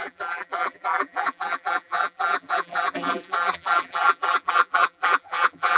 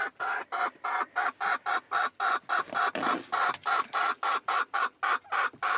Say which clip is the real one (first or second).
second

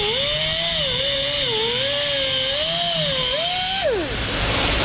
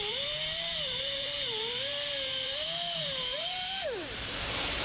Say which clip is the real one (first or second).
first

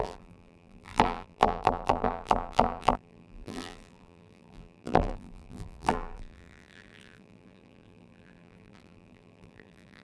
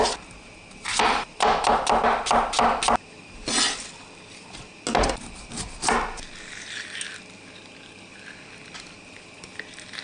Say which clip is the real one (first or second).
second